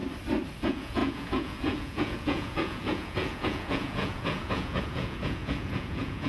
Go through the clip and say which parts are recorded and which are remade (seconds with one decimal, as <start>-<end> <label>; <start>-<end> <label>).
0.0-0.6 recorded; 0.6-6.3 remade